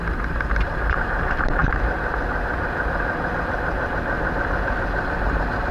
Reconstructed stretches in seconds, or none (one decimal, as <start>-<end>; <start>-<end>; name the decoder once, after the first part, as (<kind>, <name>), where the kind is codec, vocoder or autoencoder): 0.0-1.6 (vocoder, BigVGAN v2); 5.0-5.7